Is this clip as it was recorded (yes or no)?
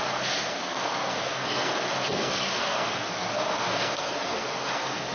no